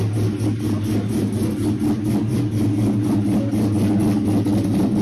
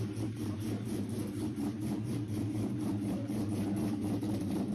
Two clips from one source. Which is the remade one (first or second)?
second